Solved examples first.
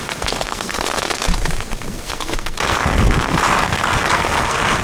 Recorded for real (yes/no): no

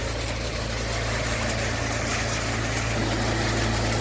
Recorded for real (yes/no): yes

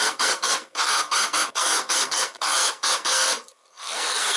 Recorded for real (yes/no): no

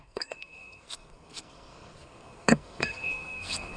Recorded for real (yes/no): no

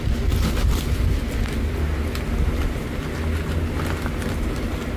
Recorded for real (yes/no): yes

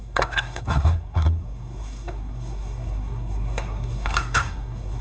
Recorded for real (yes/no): no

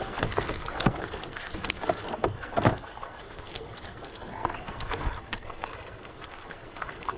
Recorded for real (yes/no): no